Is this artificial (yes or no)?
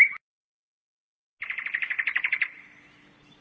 no